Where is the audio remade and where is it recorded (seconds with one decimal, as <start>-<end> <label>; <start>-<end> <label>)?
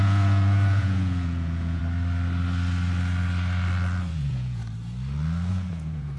0.0-1.8 remade; 1.8-4.1 recorded; 4.1-4.6 remade; 4.6-5.5 recorded; 5.5-6.2 remade